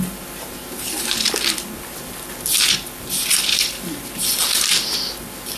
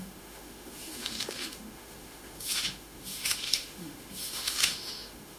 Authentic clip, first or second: first